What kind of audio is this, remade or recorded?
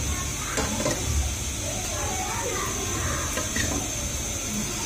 recorded